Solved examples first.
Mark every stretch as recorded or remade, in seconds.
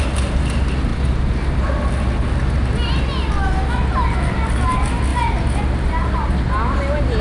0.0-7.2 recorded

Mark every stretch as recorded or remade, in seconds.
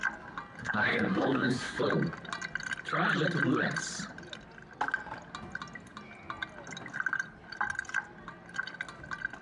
0.0-0.6 recorded; 0.6-1.8 remade; 1.8-9.4 recorded